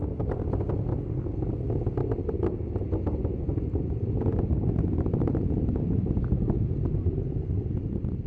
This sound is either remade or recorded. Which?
recorded